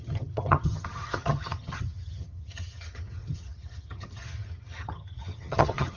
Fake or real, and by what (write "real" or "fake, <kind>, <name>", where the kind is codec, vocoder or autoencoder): fake, vocoder, HiFi-GAN